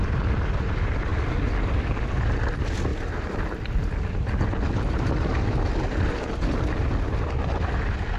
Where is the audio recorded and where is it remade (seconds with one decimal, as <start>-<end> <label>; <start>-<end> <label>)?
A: 0.0-8.2 recorded